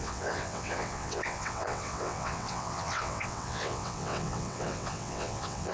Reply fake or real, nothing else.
fake